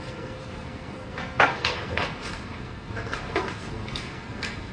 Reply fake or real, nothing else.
fake